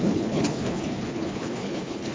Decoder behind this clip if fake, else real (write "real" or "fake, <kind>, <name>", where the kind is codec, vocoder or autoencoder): fake, codec, HILCodec